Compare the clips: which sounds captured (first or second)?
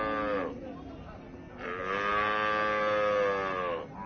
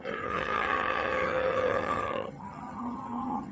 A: first